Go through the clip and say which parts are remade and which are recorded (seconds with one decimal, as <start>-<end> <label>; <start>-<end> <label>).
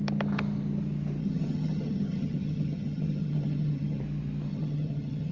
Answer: 0.0-1.2 recorded; 1.2-4.0 remade; 4.0-4.5 recorded; 4.5-5.3 remade